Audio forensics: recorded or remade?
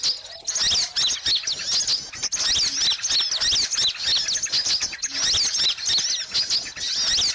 recorded